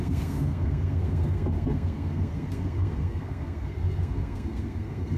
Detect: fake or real fake